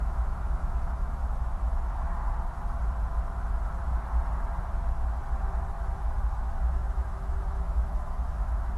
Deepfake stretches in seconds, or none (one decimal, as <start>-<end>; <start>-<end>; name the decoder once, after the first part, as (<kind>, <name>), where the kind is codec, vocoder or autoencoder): 0.0-2.2 (autoencoder, DAC-VAE); 6.2-8.8

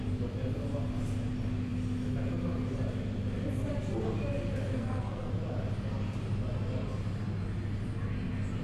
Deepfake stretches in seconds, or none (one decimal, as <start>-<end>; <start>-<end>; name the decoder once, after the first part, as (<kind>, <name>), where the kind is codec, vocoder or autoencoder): 4.7-5.3 (codec, SNAC)

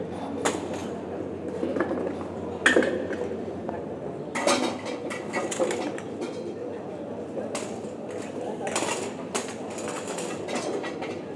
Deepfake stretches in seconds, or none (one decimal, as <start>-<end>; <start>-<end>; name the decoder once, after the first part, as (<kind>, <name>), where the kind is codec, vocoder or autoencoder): none

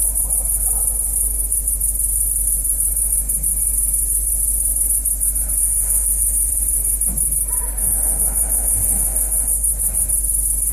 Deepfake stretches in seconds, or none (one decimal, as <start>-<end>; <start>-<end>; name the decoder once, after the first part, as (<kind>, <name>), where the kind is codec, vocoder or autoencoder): 5.6-6.5 (autoencoder, DAC-VAE); 7.8-9.7

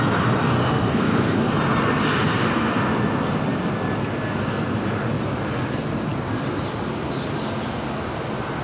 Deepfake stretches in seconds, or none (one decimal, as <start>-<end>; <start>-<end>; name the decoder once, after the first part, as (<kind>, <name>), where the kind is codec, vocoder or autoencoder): 0.6-1.5 (codec, SNAC); 2.1-2.8